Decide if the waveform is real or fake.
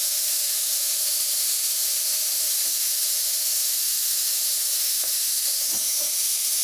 fake